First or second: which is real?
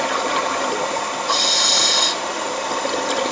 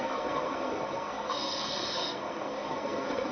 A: first